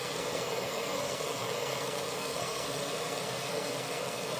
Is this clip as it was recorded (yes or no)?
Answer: no